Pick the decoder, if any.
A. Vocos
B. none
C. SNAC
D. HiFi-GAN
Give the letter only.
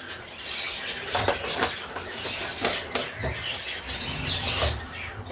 B